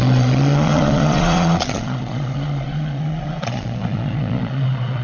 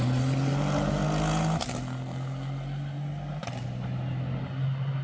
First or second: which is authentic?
second